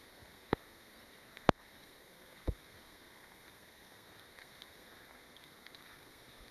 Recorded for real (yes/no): no